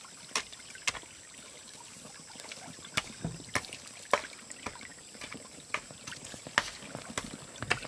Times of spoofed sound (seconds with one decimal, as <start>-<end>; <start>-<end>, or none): 4.9-6.4